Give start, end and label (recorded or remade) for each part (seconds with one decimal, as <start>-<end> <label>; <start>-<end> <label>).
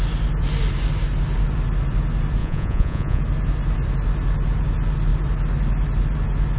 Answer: 0.0-2.4 recorded; 2.4-3.2 remade; 3.2-6.6 recorded